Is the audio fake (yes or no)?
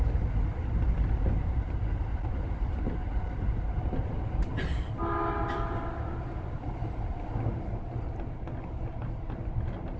no